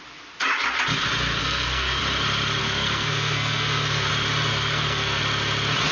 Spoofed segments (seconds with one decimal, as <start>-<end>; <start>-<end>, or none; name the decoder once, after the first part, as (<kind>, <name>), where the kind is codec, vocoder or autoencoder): 1.4-2.0 (codec, SNAC); 2.6-4.1; 4.5-5.2